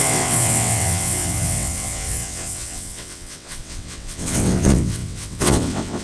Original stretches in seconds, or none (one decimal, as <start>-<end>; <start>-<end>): none